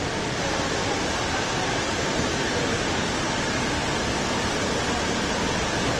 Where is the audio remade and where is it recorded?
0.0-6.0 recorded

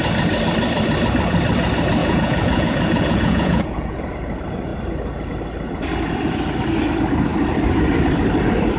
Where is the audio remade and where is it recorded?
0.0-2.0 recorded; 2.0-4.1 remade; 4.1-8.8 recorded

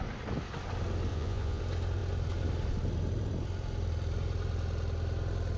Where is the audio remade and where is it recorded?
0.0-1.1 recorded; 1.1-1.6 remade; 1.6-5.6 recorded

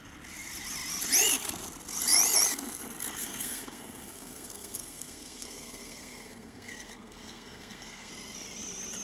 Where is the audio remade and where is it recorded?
0.0-3.2 recorded; 3.2-8.1 remade; 8.1-9.0 recorded